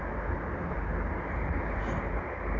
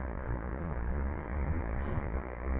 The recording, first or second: first